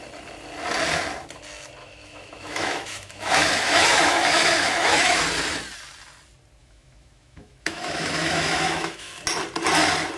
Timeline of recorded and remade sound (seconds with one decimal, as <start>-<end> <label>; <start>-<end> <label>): 0.0-1.8 recorded; 1.8-5.2 remade; 5.2-6.6 recorded; 6.6-9.1 remade; 9.1-10.2 recorded